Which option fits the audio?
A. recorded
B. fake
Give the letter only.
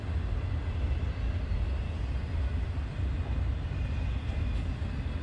A